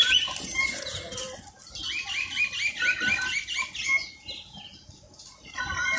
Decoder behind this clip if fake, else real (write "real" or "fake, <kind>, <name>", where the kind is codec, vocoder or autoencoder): real